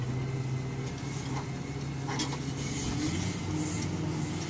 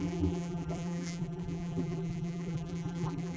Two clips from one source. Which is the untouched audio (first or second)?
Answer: first